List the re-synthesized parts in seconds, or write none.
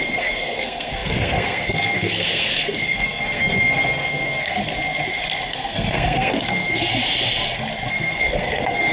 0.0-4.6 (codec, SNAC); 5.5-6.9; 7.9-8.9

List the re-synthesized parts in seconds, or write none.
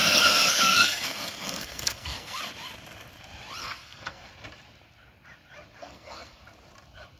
0.0-2.4 (codec, SNAC); 3.6-4.3; 5.8-6.4